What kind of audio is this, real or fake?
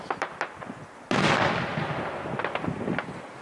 real